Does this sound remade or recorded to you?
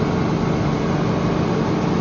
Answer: recorded